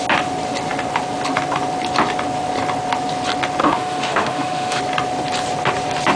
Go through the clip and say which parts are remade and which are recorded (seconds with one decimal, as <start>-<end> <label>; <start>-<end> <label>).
0.0-3.6 recorded; 3.6-4.8 remade; 4.8-6.2 recorded